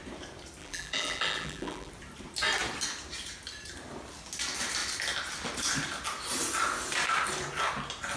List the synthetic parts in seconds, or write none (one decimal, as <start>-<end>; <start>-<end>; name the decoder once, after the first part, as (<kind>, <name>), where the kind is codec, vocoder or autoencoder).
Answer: 0.6-1.9 (vocoder, BigVGAN v2)